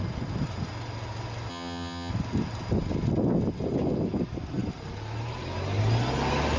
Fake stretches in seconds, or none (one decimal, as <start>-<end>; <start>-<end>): 1.5-2.1